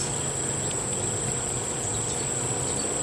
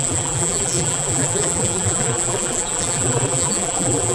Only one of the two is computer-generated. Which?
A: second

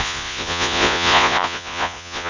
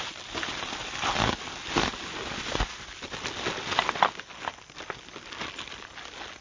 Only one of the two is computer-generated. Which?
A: first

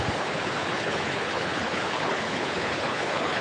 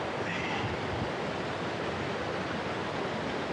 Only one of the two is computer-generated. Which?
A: first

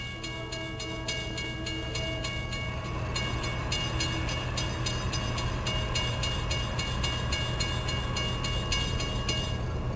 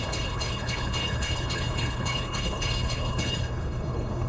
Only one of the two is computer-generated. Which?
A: second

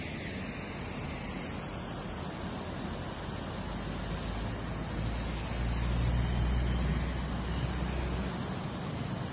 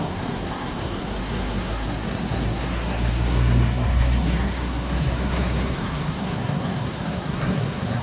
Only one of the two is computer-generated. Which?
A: second